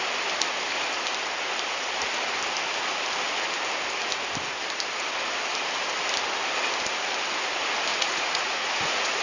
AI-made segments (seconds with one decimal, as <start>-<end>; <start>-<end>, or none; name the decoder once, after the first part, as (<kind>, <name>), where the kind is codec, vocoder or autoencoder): 7.9-9.2 (vocoder, Vocos)